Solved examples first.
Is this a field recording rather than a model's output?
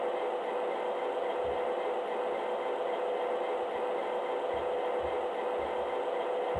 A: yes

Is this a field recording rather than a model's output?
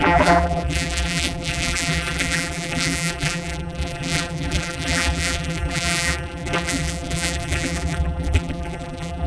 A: no